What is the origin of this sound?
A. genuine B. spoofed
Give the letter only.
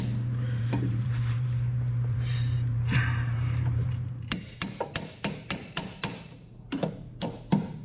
B